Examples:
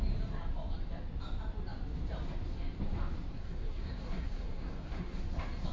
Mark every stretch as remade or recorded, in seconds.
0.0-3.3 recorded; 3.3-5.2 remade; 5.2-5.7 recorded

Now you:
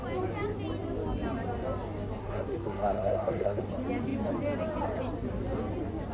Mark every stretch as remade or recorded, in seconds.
0.0-2.2 recorded; 2.2-3.6 remade; 3.6-6.1 recorded

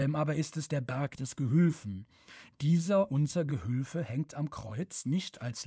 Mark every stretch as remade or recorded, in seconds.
0.0-0.9 recorded; 0.9-3.5 remade; 3.5-4.7 recorded; 4.7-5.7 remade

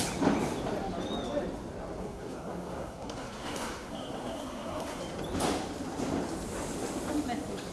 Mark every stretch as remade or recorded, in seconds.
0.0-2.0 recorded; 2.0-5.0 remade; 5.0-7.7 recorded

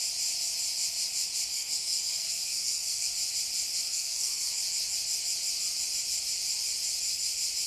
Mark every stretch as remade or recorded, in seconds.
0.0-1.5 recorded; 1.5-3.1 remade; 3.1-3.9 recorded; 3.9-4.5 remade; 4.5-7.7 recorded

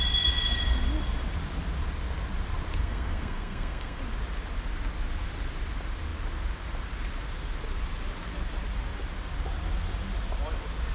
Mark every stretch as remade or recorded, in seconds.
0.0-2.7 recorded; 2.7-4.0 remade; 4.0-10.9 recorded

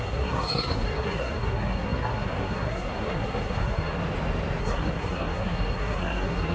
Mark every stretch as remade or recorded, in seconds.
0.0-4.0 remade; 4.0-4.6 recorded; 4.6-6.5 remade

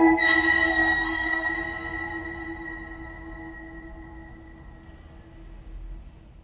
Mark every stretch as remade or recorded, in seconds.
0.0-0.7 recorded; 0.7-1.5 remade; 1.5-6.4 recorded